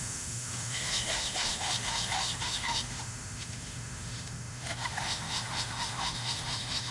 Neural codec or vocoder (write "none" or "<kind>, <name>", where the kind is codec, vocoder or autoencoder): autoencoder, DAC-VAE